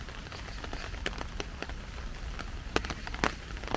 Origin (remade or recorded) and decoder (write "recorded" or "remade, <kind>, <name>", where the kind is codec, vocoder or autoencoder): recorded